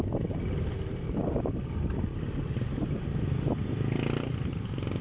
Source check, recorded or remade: recorded